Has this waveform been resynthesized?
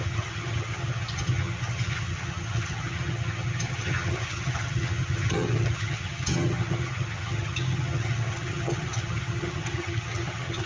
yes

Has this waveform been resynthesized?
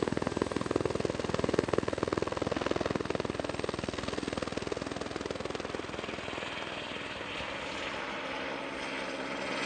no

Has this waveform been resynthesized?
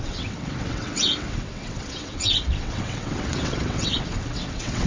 yes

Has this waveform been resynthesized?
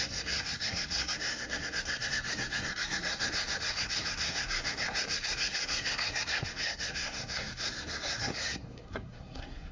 yes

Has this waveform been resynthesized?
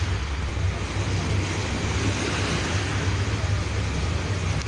no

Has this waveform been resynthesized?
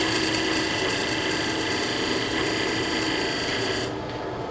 no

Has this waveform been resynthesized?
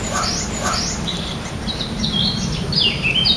no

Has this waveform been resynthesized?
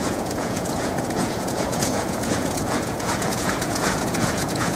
yes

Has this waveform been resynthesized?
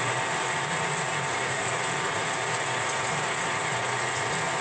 yes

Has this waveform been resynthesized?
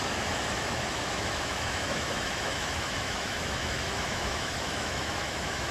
yes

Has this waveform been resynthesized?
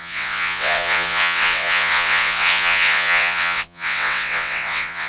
yes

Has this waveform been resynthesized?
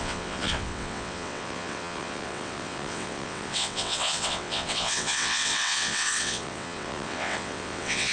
yes